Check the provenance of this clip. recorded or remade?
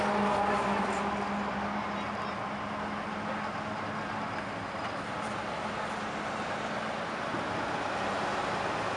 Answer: recorded